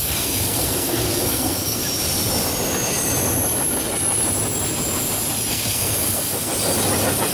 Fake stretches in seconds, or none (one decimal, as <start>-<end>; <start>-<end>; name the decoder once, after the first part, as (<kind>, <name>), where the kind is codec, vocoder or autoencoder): 0.0-1.8 (codec, SNAC); 5.5-6.5